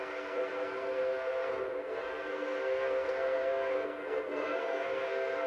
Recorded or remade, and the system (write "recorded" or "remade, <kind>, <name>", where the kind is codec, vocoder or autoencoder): remade, codec, SNAC